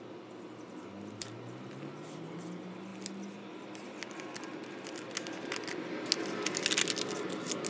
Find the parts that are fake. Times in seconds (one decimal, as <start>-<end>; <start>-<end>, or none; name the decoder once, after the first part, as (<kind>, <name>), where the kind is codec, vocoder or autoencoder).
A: none